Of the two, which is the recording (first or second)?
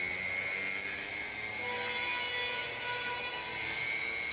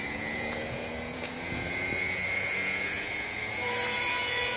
first